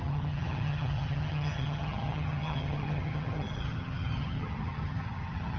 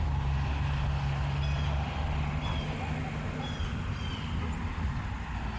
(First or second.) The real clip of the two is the second